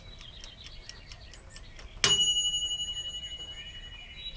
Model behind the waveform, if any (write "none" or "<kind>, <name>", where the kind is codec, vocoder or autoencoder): none